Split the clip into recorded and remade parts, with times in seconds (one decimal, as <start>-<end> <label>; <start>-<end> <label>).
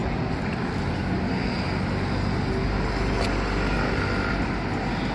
0.0-5.1 recorded